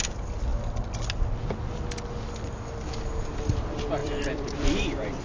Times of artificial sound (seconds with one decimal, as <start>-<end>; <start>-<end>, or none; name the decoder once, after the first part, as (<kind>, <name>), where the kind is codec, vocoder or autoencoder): 4.0-5.2 (vocoder, BigVGAN v2)